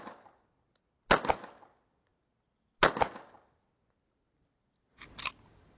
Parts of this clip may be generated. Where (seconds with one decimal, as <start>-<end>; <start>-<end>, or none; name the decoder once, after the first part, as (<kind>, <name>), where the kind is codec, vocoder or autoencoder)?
none

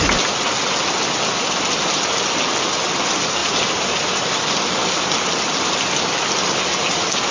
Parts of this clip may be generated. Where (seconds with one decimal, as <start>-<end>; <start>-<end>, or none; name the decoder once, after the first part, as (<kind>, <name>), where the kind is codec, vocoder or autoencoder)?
3.4-4.4 (vocoder, BigVGAN v2)